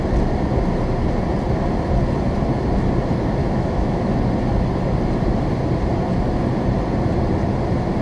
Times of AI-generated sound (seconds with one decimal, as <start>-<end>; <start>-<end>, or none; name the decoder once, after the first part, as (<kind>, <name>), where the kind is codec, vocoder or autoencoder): 3.4-4.1 (autoencoder, DAC-VAE)